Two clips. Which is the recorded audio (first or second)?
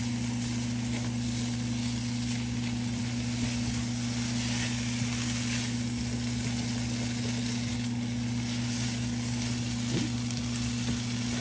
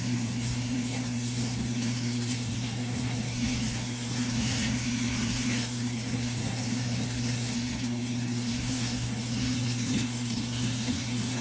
first